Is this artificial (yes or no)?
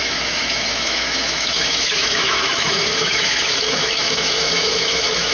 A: yes